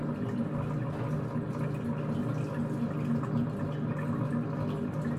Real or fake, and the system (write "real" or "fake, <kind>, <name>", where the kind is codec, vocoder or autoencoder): real